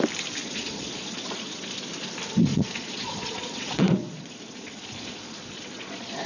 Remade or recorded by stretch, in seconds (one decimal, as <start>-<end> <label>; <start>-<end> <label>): 0.0-0.4 recorded; 0.4-1.8 remade; 1.8-2.5 recorded; 2.5-6.3 remade